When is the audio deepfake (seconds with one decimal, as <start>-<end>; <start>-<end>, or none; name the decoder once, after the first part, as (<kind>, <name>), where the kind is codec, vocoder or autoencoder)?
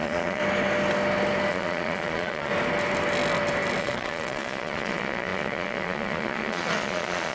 0.0-0.4 (vocoder, Vocos); 1.5-2.5; 3.8-7.3